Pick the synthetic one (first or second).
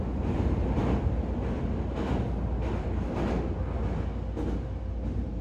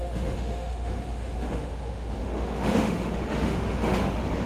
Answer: second